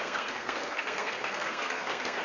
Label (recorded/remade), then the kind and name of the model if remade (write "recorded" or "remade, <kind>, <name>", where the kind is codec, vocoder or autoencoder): remade, codec, SNAC